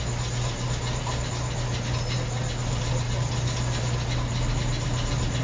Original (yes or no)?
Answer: yes